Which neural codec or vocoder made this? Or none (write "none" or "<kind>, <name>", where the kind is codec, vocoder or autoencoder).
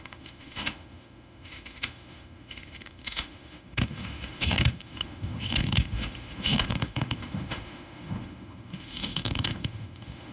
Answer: autoencoder, DAC-VAE